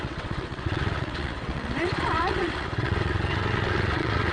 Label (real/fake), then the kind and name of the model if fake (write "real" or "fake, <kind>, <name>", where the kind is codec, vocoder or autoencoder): fake, vocoder, WaveNeXt